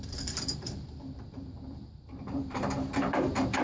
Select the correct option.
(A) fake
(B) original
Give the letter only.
A